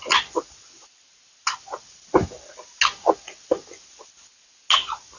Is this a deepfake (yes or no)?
no